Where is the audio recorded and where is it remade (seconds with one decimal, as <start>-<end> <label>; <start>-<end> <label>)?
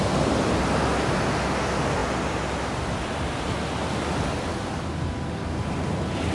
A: 0.0-6.3 recorded